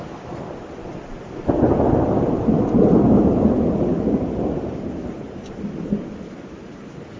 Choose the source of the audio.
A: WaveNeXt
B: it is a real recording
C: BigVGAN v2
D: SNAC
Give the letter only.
B